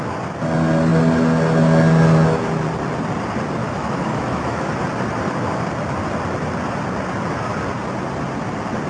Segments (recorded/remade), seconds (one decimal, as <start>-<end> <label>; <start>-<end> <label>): 0.0-3.6 recorded; 3.6-4.7 remade; 4.7-8.9 recorded